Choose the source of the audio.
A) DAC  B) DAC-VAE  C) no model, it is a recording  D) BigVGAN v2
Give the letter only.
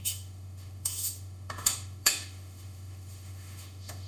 B